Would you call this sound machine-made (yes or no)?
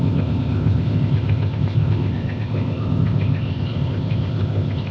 yes